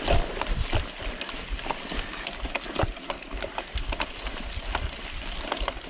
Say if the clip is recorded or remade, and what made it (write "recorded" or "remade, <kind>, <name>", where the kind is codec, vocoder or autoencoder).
recorded